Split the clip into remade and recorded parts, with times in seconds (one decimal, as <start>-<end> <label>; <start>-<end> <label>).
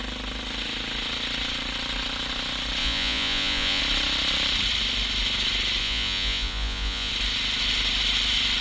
0.0-2.8 recorded; 2.8-3.8 remade; 3.8-5.8 recorded; 5.8-7.1 remade; 7.1-8.6 recorded